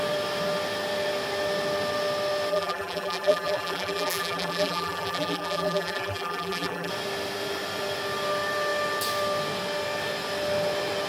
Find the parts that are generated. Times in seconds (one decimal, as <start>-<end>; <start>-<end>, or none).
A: 2.5-6.9